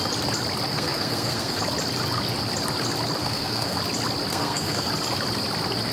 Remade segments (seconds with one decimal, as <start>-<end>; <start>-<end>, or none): 0.7-1.6; 3.2-3.8; 4.3-4.9